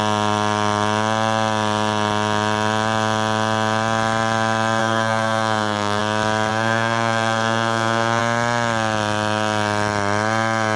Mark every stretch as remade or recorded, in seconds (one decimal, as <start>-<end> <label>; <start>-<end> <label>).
0.0-4.8 recorded; 4.8-6.0 remade; 6.0-6.5 recorded; 6.5-8.2 remade; 8.2-10.8 recorded